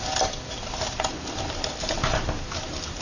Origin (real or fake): real